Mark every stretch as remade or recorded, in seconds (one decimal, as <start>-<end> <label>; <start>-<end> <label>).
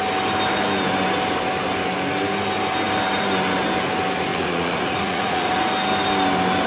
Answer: 0.0-4.3 recorded; 4.3-5.6 remade; 5.6-6.7 recorded